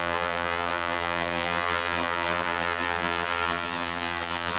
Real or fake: fake